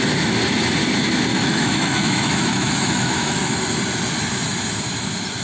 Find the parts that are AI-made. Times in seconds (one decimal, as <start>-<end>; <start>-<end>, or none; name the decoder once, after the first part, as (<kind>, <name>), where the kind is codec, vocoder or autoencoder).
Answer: 1.3-3.4 (autoencoder, DAC-VAE)